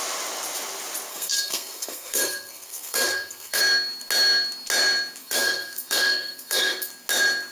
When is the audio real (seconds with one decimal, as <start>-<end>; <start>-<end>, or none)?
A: 0.0-1.1; 3.6-5.2; 6.9-7.5